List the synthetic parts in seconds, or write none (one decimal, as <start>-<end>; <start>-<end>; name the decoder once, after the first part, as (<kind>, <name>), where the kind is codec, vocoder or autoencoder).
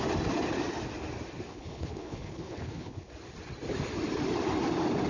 1.5-3.1 (codec, HILCodec)